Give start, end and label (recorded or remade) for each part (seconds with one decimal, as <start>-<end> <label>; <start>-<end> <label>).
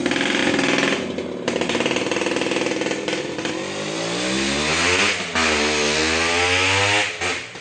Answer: 0.0-7.6 recorded